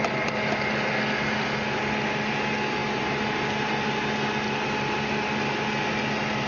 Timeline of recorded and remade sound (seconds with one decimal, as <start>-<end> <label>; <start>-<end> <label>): 0.0-6.5 recorded